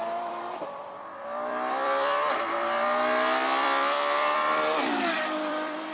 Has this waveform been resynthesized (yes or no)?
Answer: yes